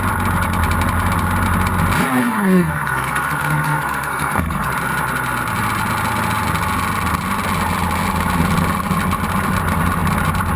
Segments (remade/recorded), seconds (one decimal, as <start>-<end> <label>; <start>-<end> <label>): 0.0-2.2 recorded; 2.2-4.7 remade; 4.7-10.6 recorded